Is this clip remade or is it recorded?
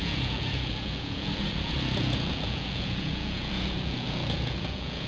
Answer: remade